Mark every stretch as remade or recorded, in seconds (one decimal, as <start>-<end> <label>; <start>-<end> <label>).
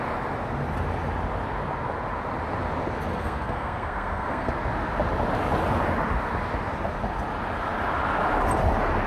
0.0-3.1 recorded; 3.1-4.5 remade; 4.5-9.1 recorded